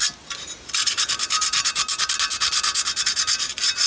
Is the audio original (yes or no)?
yes